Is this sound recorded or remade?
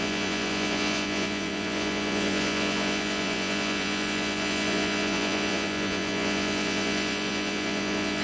remade